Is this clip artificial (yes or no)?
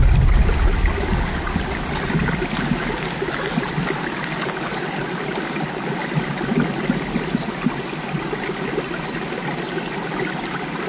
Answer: no